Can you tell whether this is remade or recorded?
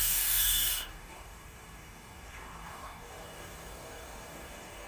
remade